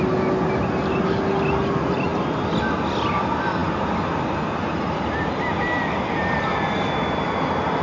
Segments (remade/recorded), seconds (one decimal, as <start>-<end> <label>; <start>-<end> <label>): 0.0-7.8 recorded